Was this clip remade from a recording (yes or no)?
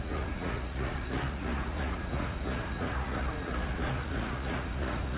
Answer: yes